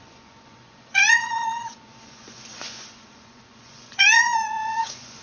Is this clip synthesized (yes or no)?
yes